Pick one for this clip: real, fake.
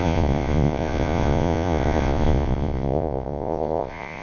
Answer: fake